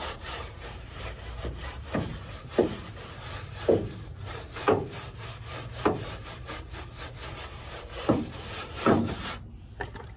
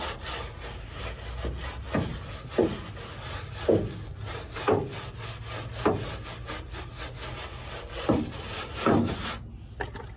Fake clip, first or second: first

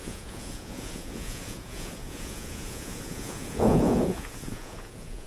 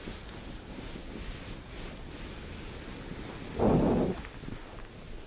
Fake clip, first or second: first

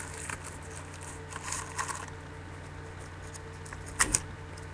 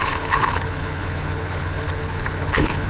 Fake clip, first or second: second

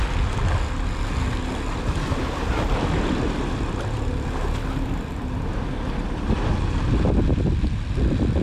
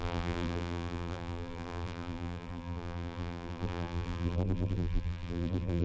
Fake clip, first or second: second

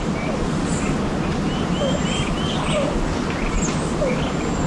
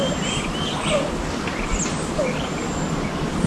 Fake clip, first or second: second